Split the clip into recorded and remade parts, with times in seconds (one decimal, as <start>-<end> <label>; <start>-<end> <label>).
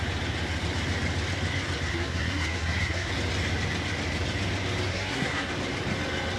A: 0.0-1.9 recorded; 1.9-3.1 remade; 3.1-4.9 recorded; 4.9-5.5 remade; 5.5-6.4 recorded